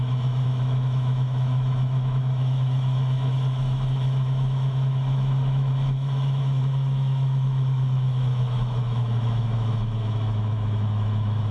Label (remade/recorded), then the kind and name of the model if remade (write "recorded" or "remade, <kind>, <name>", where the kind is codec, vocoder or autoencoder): remade, autoencoder, DAC-VAE